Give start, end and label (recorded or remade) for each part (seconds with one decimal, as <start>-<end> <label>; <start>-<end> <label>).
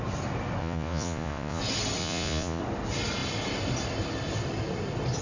0.0-0.6 recorded; 0.6-1.6 remade; 1.6-2.0 recorded; 2.0-2.6 remade; 2.6-5.2 recorded